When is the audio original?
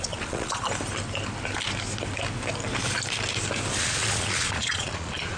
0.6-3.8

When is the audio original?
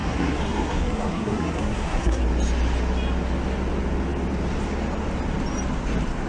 2.2-6.3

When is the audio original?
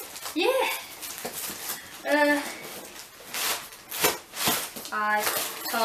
0.0-5.8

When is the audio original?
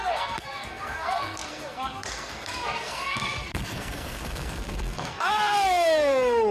none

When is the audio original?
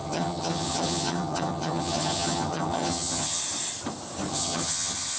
3.4-4.3